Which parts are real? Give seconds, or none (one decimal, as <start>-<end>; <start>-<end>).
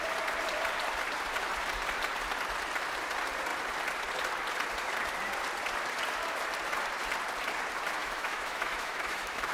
0.0-8.0